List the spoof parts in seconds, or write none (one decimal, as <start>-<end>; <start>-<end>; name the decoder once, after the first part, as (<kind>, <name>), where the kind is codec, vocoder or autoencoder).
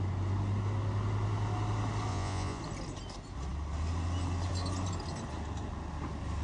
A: 2.1-2.6 (vocoder, Vocos)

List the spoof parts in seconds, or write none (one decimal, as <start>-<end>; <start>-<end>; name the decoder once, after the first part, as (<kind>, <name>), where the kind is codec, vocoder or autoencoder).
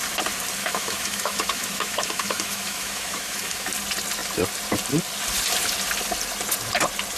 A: 0.6-3.7 (autoencoder, DAC-VAE)